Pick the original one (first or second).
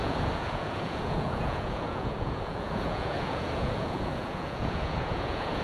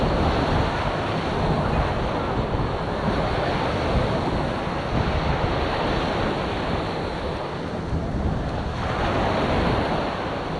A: second